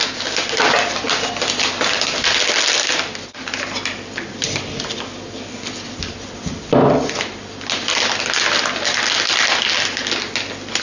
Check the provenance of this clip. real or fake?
real